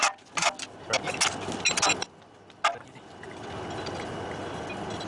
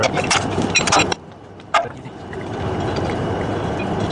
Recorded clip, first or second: first